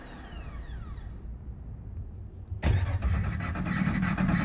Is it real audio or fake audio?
real